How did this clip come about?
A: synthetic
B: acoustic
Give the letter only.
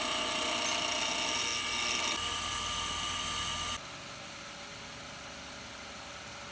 B